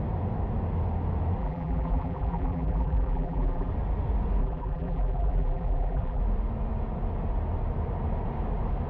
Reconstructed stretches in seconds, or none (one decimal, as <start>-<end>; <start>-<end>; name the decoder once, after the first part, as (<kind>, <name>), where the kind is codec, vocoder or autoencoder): 1.4-3.7 (vocoder, BigVGAN v2); 4.4-6.2